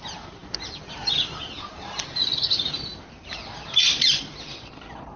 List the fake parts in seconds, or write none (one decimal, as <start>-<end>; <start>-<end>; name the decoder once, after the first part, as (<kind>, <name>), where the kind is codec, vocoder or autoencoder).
none